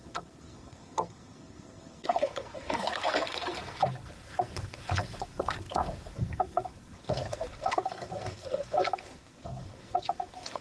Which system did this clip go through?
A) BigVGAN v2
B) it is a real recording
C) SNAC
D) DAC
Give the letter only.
C